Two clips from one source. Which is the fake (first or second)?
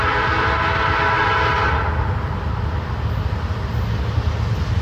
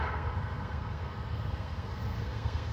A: second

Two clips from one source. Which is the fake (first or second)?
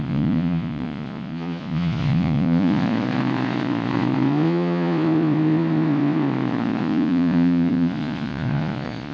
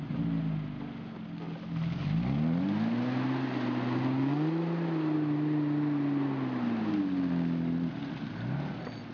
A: first